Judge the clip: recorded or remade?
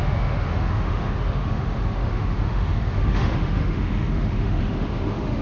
remade